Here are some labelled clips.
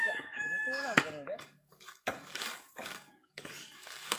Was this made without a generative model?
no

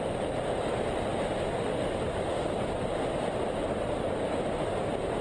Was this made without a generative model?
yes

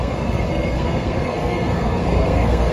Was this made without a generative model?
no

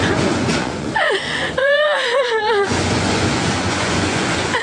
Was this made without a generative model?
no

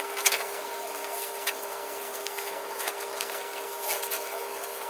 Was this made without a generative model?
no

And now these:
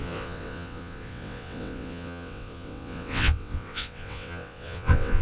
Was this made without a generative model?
no